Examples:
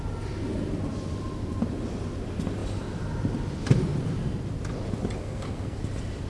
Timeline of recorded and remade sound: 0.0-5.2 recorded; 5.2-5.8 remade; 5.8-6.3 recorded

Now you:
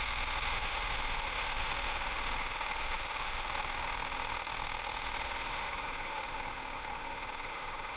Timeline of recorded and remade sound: 0.0-8.0 remade

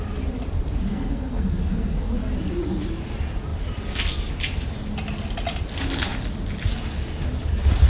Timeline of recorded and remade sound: 0.0-0.9 recorded; 0.9-2.1 remade; 2.1-7.9 recorded

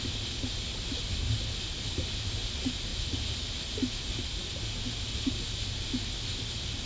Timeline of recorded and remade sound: 0.0-6.8 recorded

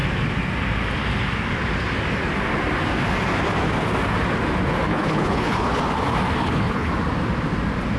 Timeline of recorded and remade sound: 0.0-4.9 recorded; 4.9-5.8 remade; 5.8-6.4 recorded; 6.4-6.9 remade; 6.9-8.0 recorded

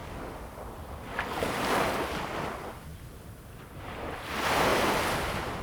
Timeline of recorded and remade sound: 0.0-5.6 recorded

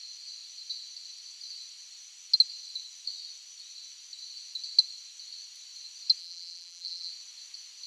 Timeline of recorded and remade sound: 0.0-6.2 recorded; 6.2-7.1 remade; 7.1-7.9 recorded